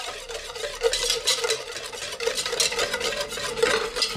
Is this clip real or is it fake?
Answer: real